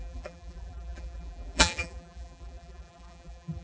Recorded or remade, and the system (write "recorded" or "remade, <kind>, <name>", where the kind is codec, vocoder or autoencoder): remade, vocoder, BigVGAN v2